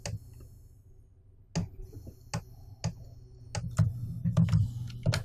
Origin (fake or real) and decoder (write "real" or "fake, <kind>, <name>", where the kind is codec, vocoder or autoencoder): real